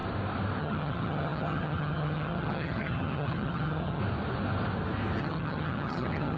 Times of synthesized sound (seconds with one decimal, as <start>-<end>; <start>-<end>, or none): 0.6-4.0; 5.2-6.4